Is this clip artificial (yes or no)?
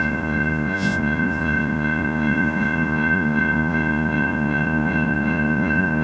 yes